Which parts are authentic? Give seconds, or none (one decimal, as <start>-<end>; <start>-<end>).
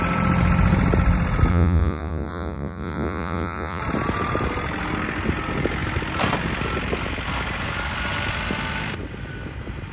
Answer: 0.0-1.5; 3.8-9.9